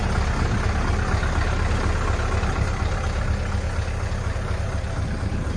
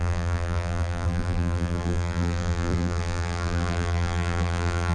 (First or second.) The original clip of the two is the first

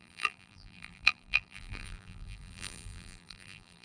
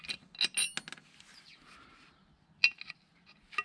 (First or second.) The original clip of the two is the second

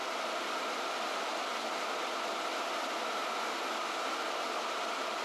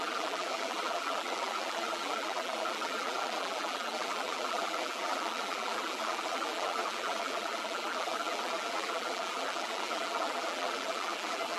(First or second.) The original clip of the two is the first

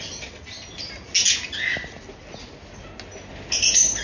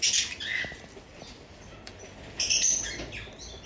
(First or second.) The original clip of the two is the first